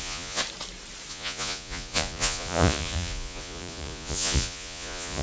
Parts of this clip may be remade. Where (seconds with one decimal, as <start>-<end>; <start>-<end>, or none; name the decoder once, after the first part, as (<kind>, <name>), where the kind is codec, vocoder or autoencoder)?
0.0-0.4 (vocoder, Vocos); 1.1-5.2